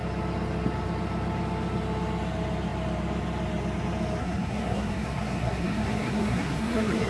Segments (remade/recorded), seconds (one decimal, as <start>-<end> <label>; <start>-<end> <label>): 0.0-4.2 recorded; 4.2-7.1 remade